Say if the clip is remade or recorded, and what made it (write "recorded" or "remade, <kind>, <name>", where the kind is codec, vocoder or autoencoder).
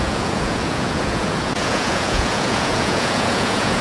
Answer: remade, vocoder, Vocos